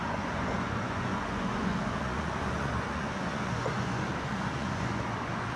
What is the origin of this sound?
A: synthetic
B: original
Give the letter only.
A